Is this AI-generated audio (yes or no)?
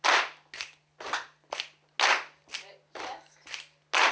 no